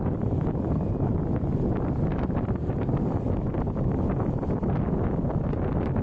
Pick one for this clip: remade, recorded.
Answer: recorded